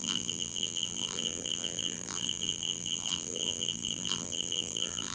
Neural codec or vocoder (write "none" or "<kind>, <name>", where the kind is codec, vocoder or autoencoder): vocoder, BigVGAN v2